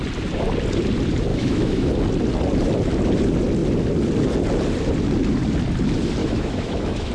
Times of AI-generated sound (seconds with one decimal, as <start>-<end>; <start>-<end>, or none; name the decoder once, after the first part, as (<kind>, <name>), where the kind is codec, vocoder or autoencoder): 1.3-1.9 (autoencoder, DAC-VAE); 6.2-7.1